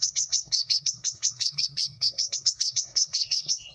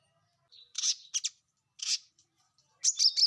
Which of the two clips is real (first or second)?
second